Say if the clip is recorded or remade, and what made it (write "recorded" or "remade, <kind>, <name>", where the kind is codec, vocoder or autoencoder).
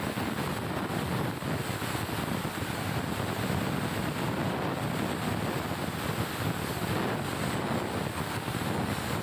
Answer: recorded